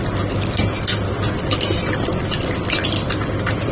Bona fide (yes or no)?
yes